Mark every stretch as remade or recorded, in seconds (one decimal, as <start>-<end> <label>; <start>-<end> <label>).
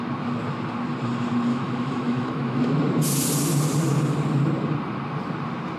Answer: 0.0-1.5 recorded; 1.5-2.8 remade; 2.8-5.8 recorded